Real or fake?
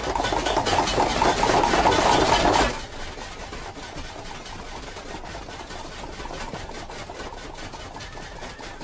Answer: real